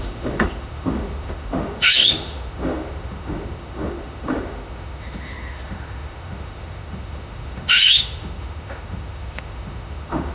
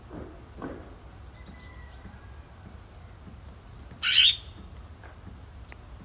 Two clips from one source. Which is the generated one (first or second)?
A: first